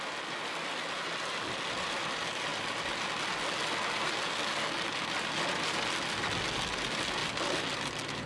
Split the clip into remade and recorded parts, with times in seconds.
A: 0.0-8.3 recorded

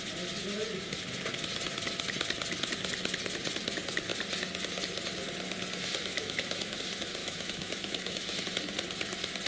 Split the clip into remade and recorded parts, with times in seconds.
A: 0.0-6.1 recorded; 6.1-6.8 remade; 6.8-7.2 recorded; 7.2-8.4 remade; 8.4-9.5 recorded